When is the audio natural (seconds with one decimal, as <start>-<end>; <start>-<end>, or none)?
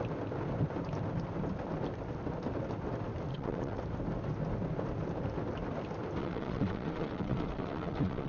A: 0.0-3.3; 3.8-6.2